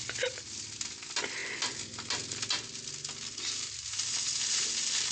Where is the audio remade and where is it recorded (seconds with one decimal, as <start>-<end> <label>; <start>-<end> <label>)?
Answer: 0.0-5.1 recorded